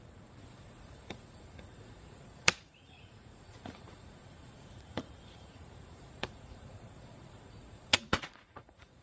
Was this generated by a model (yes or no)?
yes